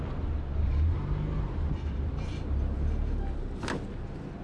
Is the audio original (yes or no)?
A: yes